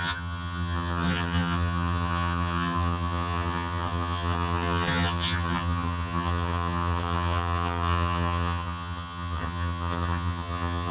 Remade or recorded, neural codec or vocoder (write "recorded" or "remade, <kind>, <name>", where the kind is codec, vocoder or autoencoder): remade, vocoder, HiFi-GAN